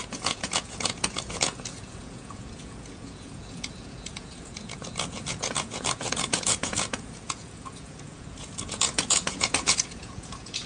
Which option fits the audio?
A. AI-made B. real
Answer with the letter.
A